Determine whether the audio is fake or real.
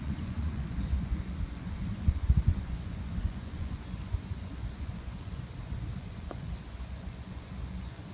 fake